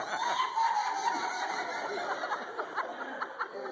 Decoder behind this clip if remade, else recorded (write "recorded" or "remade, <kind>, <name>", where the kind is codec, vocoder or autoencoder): recorded